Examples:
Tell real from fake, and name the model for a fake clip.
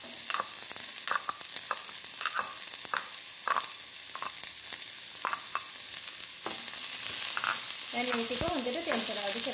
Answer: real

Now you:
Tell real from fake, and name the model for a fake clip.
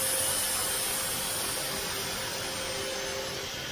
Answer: real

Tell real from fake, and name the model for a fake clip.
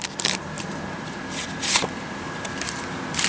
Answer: fake, vocoder, BigVGAN v2